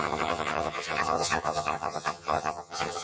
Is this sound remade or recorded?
remade